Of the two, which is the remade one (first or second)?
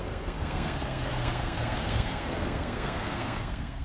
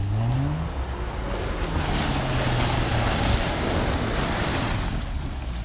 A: first